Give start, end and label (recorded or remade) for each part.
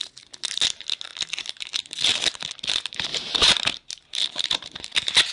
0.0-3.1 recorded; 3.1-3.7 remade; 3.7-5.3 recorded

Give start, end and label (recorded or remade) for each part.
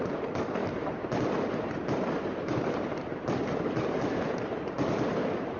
0.0-0.6 remade; 0.6-1.4 recorded; 1.4-5.6 remade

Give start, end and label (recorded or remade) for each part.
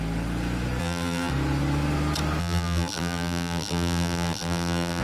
0.0-0.8 recorded; 0.8-1.3 remade; 1.3-2.4 recorded; 2.4-5.0 remade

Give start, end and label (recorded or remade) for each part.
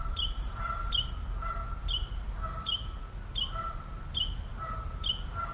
0.0-1.1 remade; 1.1-1.8 recorded; 1.8-3.0 remade; 3.0-5.5 recorded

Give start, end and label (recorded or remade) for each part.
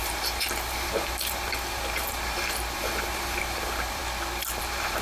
0.0-4.0 remade; 4.0-4.6 recorded; 4.6-5.0 remade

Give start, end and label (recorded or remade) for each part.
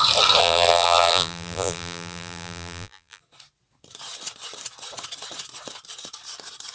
0.0-0.4 recorded; 0.4-3.2 remade; 3.2-6.7 recorded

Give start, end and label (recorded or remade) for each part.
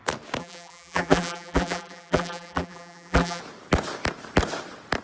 0.0-0.4 recorded; 0.4-3.4 remade; 3.4-5.0 recorded